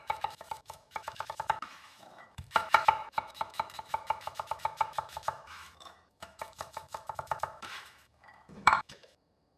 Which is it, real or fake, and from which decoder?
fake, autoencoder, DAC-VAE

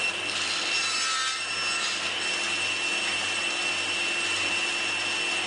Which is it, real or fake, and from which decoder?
real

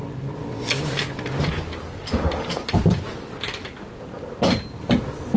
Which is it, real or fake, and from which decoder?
real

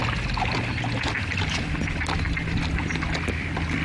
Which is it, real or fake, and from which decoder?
real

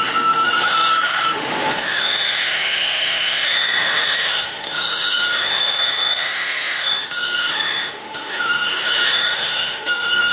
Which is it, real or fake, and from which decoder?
fake, autoencoder, DAC-VAE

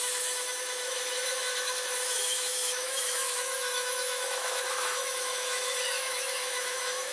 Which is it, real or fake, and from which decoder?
fake, autoencoder, DAC-VAE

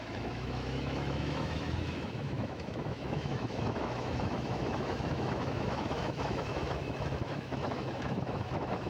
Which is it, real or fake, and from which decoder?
fake, autoencoder, DAC-VAE